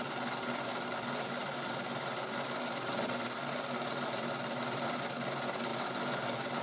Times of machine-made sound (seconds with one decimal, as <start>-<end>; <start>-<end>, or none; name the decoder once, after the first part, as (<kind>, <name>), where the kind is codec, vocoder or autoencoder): none

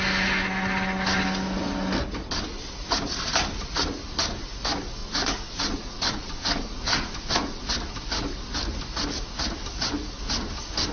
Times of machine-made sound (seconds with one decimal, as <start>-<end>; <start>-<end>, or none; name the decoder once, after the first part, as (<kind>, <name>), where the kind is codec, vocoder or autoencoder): 5.0-7.6 (vocoder, Vocos)